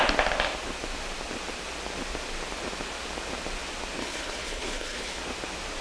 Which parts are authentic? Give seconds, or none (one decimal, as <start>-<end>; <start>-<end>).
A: 0.0-4.0; 5.2-5.8